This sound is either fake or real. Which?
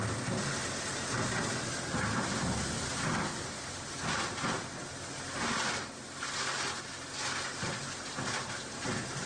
real